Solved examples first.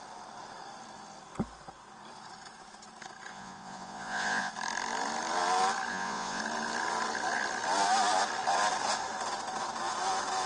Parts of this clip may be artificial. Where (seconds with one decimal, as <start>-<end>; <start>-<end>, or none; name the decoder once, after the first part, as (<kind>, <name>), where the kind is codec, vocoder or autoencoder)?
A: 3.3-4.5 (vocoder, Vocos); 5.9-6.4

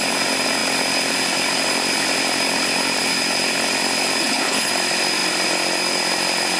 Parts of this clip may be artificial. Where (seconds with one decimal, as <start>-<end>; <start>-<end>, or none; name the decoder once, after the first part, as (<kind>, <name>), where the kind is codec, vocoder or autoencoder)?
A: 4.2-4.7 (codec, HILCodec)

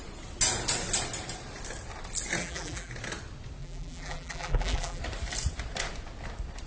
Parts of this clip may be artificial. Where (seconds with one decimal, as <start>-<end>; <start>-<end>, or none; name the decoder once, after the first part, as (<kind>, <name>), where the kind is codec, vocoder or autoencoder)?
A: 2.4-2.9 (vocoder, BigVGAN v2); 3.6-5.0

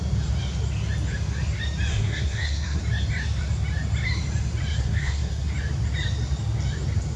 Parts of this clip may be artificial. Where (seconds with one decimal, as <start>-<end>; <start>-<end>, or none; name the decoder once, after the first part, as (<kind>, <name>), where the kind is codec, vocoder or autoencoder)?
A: 1.9-2.8 (codec, SNAC); 4.8-5.5

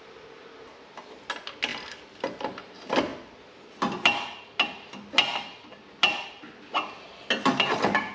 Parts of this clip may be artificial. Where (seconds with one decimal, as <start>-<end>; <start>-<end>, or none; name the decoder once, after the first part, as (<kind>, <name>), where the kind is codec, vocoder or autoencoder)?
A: none